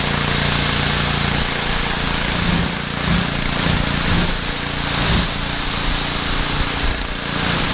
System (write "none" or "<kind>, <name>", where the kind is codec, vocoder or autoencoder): none